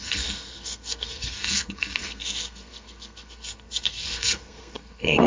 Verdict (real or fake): fake